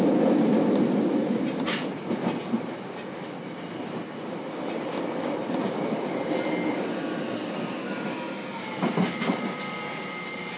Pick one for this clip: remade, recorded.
recorded